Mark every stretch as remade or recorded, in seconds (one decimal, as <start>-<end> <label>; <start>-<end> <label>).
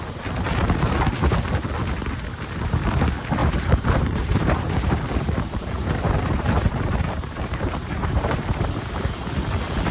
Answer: 0.0-3.4 recorded; 3.4-8.4 remade; 8.4-9.9 recorded